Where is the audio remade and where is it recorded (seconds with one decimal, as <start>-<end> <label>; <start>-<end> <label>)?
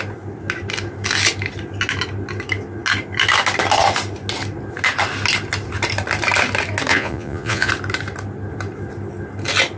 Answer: 0.0-6.9 recorded; 6.9-7.7 remade; 7.7-9.8 recorded